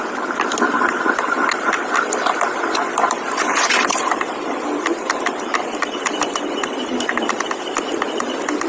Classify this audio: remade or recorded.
recorded